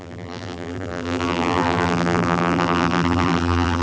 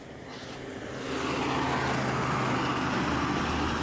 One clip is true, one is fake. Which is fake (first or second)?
first